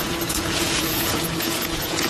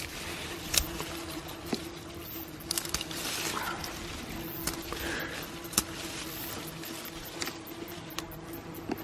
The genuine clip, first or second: second